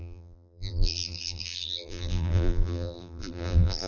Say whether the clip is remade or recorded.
remade